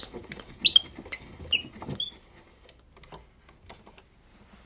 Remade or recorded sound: recorded